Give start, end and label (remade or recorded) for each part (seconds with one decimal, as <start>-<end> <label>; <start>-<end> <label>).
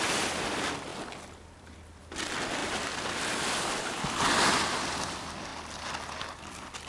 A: 0.0-5.5 remade; 5.5-6.9 recorded